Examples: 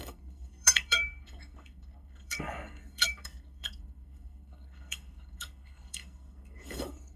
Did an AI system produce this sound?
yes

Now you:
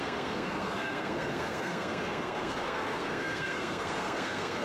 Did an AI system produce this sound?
yes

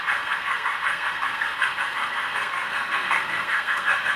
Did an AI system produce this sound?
yes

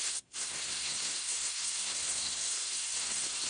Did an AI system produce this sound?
yes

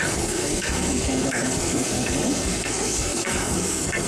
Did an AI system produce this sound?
yes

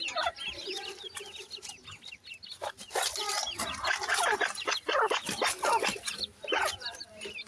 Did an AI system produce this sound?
no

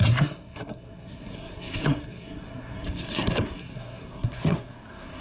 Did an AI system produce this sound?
yes